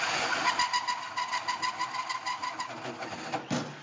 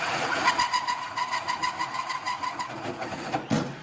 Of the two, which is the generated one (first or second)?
second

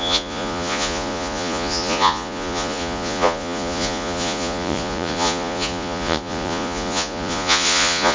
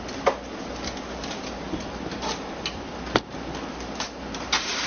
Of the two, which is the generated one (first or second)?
first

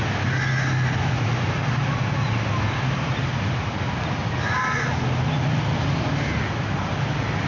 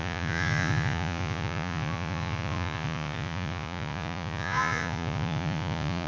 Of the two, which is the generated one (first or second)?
second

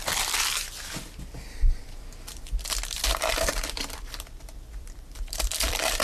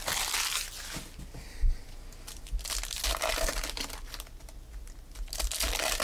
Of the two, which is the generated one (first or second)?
first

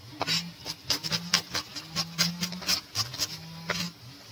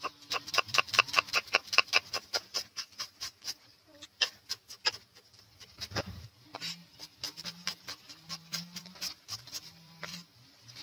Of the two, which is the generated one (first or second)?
second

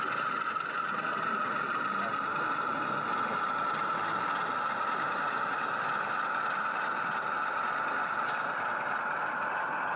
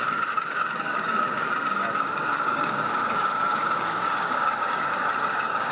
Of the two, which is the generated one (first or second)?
second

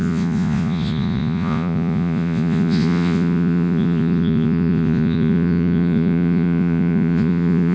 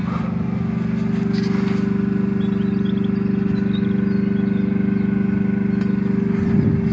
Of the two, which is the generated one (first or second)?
first